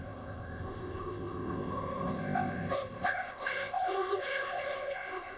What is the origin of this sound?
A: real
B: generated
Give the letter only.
B